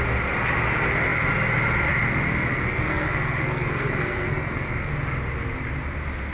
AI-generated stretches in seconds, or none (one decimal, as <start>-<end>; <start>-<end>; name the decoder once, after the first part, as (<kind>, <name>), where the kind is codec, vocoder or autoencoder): 2.5-4.9 (codec, SNAC)